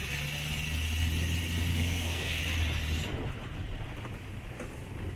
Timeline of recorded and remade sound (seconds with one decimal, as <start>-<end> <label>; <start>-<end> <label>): 0.0-1.7 recorded; 1.7-2.4 remade; 2.4-5.2 recorded